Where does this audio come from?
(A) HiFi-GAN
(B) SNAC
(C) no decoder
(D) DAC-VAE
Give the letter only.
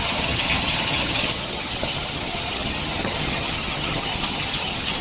A